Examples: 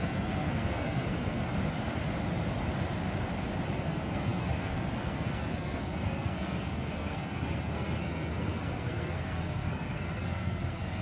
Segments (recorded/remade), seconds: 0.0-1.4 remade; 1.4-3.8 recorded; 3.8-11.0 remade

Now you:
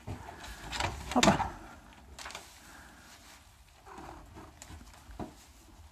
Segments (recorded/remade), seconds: 0.0-5.9 recorded

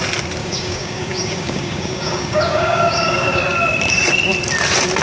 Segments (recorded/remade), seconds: 0.0-0.4 recorded; 0.4-3.4 remade; 3.4-5.0 recorded